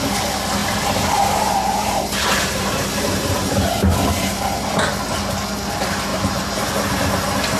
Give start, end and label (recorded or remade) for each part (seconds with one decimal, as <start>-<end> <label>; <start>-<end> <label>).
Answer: 0.0-0.6 recorded; 0.6-3.7 remade; 3.7-6.1 recorded; 6.1-6.6 remade; 6.6-7.6 recorded